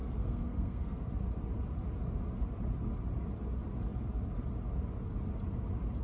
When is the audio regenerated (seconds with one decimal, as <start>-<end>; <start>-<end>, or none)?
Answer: 0.0-1.1